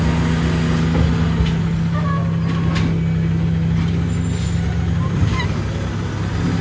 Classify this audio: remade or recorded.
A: recorded